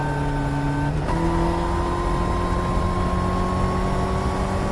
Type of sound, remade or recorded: recorded